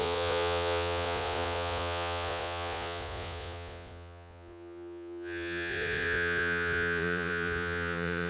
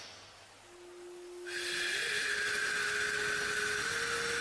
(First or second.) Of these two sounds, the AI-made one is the first